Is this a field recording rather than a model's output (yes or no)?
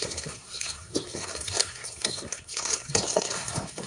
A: no